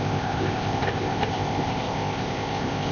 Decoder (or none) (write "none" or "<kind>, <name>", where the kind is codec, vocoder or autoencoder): codec, ZipCodec